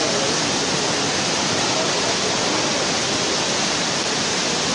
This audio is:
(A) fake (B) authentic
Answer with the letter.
B